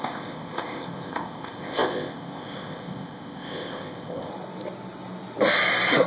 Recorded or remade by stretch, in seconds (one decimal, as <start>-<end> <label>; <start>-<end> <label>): 0.0-4.3 remade; 4.3-6.1 recorded